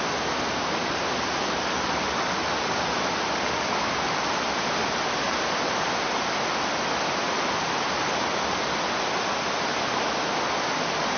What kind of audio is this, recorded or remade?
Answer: recorded